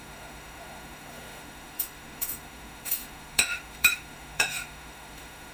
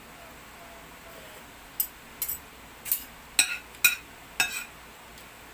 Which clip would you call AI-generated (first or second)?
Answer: first